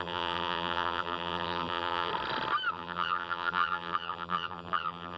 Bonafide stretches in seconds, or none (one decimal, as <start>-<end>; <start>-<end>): 2.1-2.7